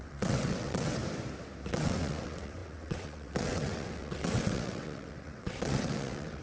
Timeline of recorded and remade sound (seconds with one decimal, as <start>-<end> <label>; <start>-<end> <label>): 0.0-1.0 remade; 1.0-1.7 recorded; 1.7-6.4 remade